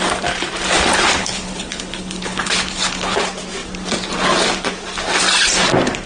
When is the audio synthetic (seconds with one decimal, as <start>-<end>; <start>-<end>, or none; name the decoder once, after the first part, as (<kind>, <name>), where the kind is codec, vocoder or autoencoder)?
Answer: 1.2-3.2 (codec, HILCodec)